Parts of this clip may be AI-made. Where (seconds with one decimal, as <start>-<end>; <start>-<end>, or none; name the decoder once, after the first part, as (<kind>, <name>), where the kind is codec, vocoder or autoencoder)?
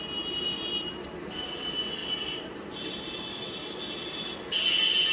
none